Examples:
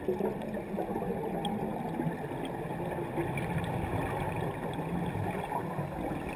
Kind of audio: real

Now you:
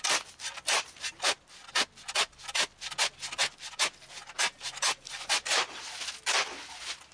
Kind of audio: real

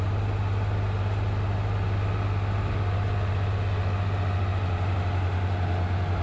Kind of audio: real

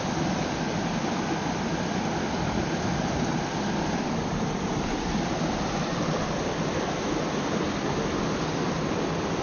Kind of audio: real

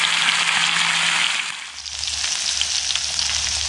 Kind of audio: real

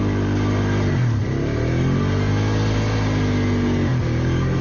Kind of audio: real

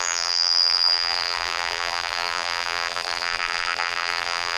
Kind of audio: fake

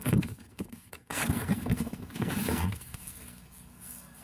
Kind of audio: fake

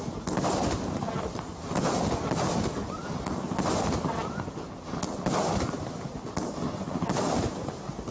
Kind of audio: real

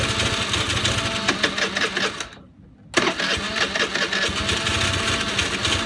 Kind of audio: real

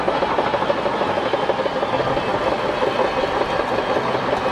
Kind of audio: real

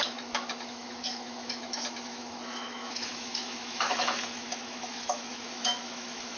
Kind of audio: fake